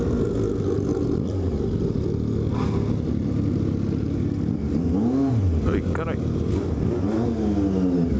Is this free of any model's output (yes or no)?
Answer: yes